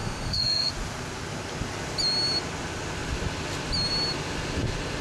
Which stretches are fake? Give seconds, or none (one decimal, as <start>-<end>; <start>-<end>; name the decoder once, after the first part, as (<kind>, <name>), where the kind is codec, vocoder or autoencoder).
0.0-0.7 (autoencoder, DAC-VAE)